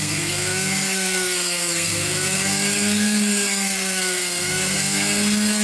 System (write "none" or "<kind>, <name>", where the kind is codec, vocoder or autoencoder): codec, SNAC